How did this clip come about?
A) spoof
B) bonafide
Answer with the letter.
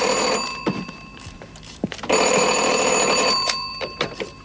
A